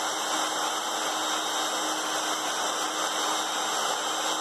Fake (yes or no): no